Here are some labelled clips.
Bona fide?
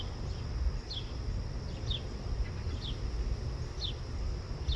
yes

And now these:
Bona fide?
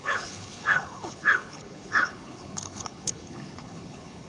no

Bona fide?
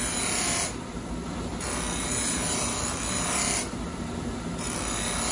yes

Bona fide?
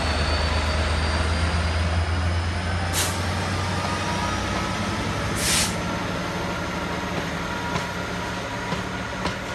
yes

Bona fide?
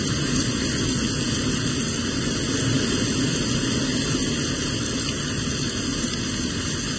yes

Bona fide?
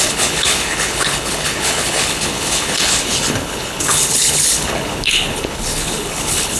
no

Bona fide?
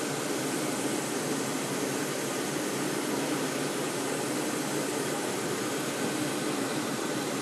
yes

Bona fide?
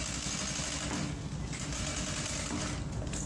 yes